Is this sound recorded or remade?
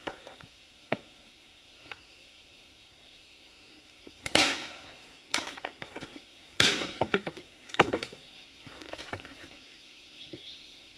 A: remade